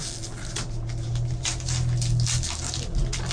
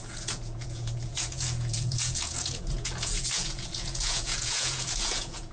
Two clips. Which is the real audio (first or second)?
first